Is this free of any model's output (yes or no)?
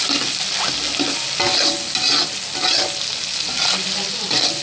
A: yes